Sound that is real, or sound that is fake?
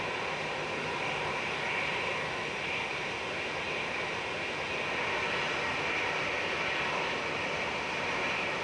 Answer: real